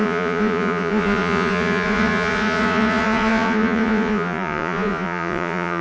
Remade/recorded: remade